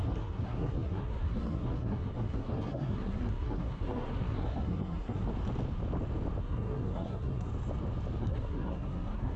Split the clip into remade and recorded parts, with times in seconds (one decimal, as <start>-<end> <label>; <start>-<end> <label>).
0.0-5.3 remade; 5.3-6.4 recorded; 6.4-7.5 remade; 7.5-8.2 recorded; 8.2-9.4 remade